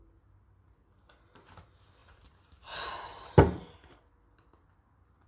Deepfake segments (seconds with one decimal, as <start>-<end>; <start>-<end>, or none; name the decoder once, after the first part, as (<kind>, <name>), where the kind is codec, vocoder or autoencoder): 2.0-3.3 (vocoder, BigVGAN v2)